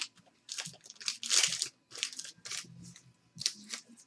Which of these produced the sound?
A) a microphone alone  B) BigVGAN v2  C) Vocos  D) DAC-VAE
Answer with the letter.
A